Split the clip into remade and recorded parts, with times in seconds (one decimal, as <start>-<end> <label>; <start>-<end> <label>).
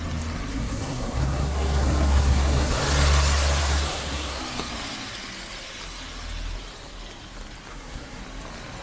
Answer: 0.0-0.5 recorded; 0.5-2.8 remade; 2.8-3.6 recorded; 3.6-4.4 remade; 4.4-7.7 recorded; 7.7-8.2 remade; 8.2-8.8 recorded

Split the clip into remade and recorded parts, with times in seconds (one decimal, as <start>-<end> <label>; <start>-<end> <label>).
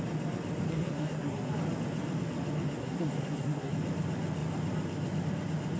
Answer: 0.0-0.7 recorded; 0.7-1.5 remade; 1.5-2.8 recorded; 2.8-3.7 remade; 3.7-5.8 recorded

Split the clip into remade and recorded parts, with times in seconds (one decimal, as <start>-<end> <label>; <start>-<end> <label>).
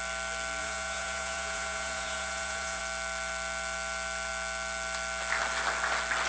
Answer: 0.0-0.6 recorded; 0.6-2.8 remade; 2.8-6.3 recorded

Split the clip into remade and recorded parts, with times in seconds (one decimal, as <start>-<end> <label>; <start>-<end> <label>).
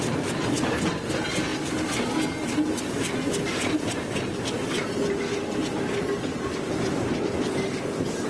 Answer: 0.0-8.3 recorded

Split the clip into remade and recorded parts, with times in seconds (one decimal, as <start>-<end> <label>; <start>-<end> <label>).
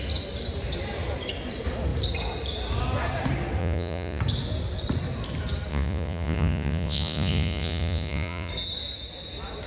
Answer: 0.0-3.6 recorded; 3.6-4.2 remade; 4.2-5.7 recorded; 5.7-8.5 remade; 8.5-9.7 recorded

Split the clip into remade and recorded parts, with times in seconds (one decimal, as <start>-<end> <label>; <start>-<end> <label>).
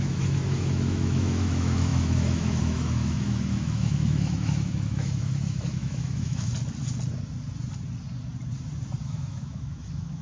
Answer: 0.0-6.5 remade; 6.5-9.0 recorded; 9.0-10.2 remade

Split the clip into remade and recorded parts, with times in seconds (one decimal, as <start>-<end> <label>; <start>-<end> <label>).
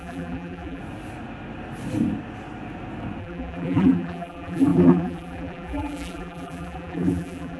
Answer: 0.0-0.8 remade; 0.8-3.2 recorded; 3.2-7.6 remade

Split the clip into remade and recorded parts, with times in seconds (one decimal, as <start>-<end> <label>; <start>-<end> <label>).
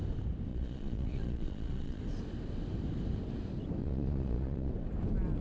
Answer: 0.0-0.5 recorded; 0.5-2.0 remade; 2.0-3.8 recorded; 3.8-4.7 remade; 4.7-5.4 recorded